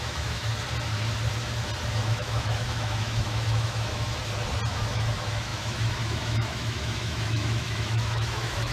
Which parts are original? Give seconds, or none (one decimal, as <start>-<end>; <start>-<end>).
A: 0.5-1.9; 4.2-4.7